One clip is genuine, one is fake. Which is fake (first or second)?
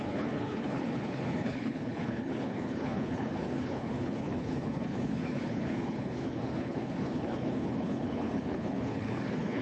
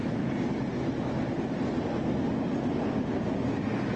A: first